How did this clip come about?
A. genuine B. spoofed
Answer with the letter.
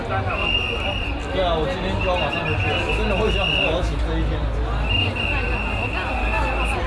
A